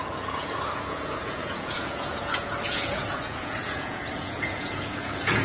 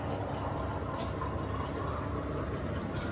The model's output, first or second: first